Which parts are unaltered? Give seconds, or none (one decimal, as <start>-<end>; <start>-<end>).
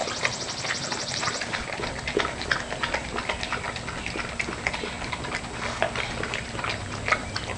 1.8-7.6